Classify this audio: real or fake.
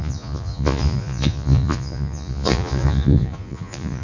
fake